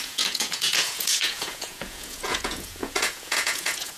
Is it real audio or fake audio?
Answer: fake